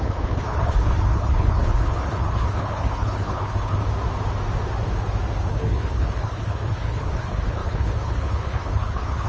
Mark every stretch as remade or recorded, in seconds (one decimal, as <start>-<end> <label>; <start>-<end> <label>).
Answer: 0.0-3.8 remade; 3.8-5.4 recorded; 5.4-9.3 remade